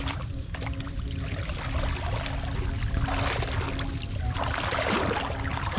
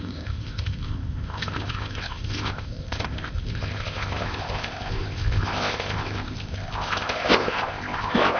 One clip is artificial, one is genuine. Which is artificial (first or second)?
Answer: second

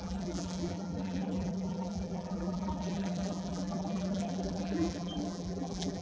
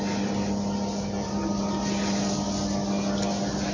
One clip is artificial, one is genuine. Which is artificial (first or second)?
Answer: first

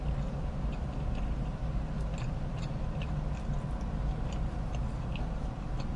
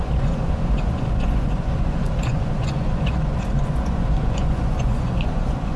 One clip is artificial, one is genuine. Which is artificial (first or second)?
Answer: second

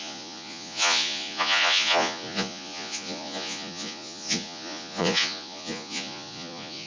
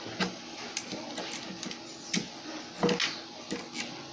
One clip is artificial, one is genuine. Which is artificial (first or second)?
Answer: first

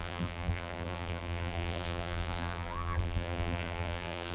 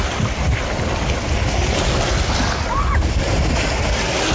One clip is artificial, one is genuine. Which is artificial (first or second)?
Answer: first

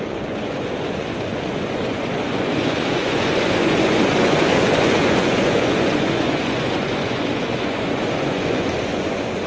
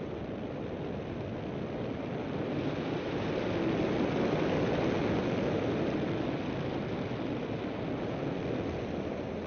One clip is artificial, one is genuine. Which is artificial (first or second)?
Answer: first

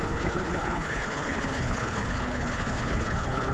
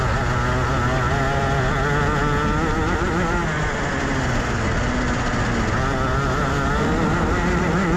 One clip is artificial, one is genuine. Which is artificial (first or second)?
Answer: first